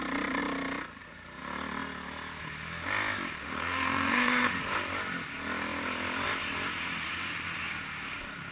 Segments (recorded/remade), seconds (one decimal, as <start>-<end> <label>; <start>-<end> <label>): 0.0-3.4 recorded; 3.4-4.6 remade; 4.6-8.5 recorded